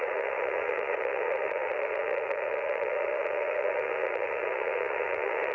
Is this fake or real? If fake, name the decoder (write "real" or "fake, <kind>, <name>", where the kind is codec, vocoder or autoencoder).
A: fake, vocoder, Vocos